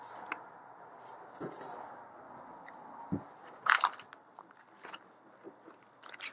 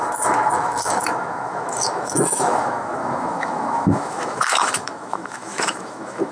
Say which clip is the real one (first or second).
first